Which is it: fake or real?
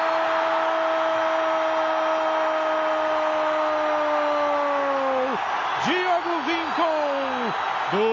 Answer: real